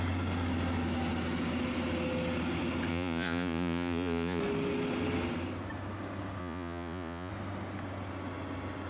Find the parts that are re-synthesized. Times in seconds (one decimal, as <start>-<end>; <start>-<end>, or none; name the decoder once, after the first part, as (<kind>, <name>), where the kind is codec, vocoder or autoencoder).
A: 2.9-4.4 (vocoder, Vocos); 6.4-7.3